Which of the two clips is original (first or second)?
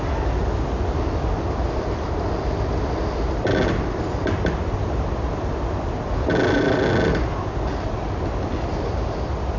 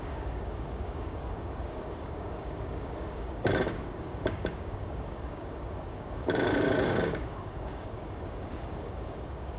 first